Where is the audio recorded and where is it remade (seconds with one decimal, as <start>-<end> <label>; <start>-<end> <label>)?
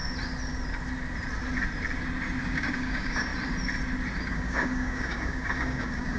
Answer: 0.0-2.4 recorded; 2.4-3.3 remade; 3.3-4.3 recorded; 4.3-6.2 remade